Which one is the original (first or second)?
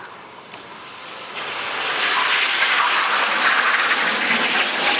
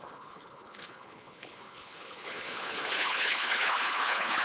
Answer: first